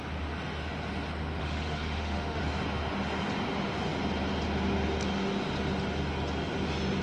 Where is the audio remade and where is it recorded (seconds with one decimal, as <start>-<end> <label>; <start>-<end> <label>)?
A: 0.0-1.4 recorded; 1.4-2.4 remade; 2.4-7.0 recorded